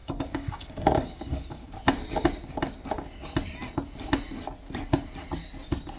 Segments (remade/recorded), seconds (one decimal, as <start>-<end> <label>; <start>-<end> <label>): 0.0-1.8 remade; 1.8-6.0 recorded